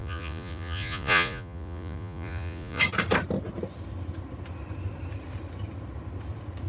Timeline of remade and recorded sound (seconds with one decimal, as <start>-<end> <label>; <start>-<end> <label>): 0.0-2.8 remade; 2.8-6.7 recorded